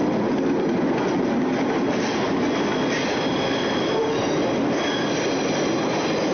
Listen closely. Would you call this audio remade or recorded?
recorded